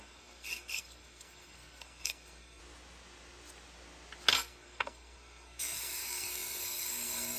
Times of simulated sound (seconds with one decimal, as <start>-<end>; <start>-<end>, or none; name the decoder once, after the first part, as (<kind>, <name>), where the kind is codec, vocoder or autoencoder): 0.0-2.6 (codec, SNAC); 4.3-7.4